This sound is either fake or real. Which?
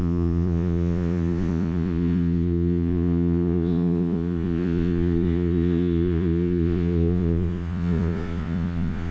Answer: fake